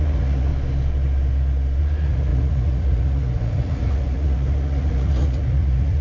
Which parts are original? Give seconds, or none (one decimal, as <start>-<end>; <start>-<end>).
0.5-1.8